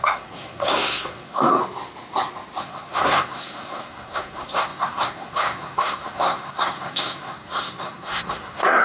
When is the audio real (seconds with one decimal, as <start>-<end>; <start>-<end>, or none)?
1.6-2.6